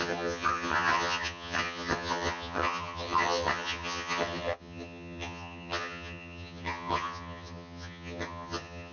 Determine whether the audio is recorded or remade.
remade